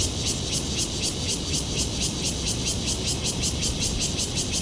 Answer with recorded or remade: remade